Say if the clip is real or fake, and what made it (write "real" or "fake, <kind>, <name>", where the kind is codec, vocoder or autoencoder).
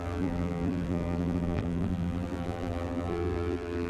fake, vocoder, BigVGAN v2